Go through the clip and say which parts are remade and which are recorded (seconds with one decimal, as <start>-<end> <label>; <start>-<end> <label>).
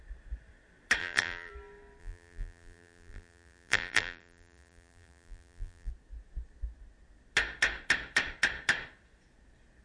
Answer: 0.0-1.0 recorded; 1.0-1.5 remade; 1.5-2.0 recorded; 2.0-5.9 remade; 5.9-9.8 recorded